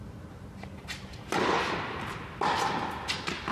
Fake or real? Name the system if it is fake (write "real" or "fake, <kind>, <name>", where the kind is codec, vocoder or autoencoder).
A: real